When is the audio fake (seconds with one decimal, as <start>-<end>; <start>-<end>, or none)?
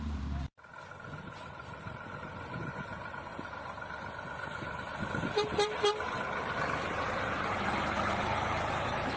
0.0-3.3; 7.2-9.2